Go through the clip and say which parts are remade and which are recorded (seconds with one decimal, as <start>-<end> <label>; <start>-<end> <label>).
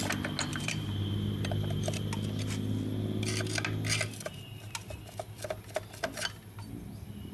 0.0-0.5 recorded; 0.5-1.8 remade; 1.8-7.3 recorded